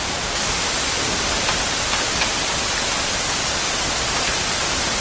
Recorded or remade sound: recorded